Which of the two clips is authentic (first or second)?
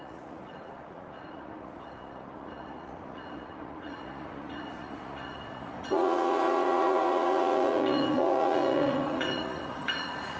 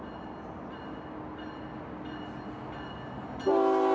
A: second